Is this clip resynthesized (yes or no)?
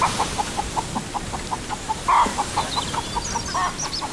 no